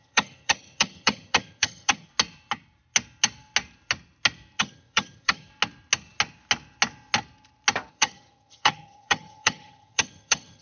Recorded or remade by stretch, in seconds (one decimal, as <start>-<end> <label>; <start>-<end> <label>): 0.0-2.1 remade; 2.1-4.6 recorded; 4.6-5.5 remade; 5.5-7.9 recorded; 7.9-10.6 remade